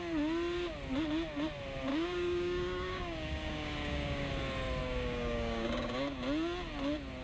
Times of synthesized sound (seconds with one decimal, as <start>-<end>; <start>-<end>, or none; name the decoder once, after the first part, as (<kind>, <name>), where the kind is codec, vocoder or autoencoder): 1.9-4.3 (codec, DAC); 4.8-6.2